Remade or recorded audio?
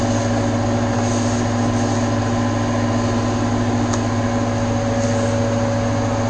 recorded